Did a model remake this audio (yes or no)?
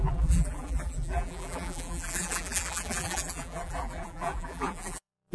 yes